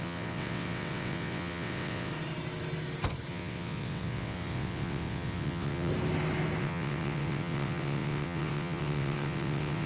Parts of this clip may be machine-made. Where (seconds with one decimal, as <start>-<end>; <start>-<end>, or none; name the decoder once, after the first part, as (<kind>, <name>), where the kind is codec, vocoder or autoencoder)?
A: 0.0-2.1 (vocoder, WaveNeXt); 3.3-5.9; 6.6-9.9